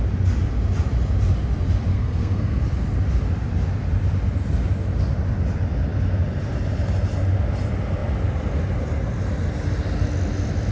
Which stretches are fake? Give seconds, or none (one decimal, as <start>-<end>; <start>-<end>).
1.9-2.6